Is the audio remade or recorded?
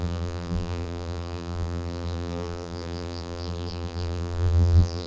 remade